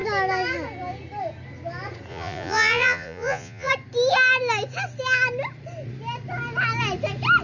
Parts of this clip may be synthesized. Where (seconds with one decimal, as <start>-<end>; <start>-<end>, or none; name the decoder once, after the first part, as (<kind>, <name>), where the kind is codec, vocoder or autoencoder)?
2.1-3.7 (vocoder, Vocos)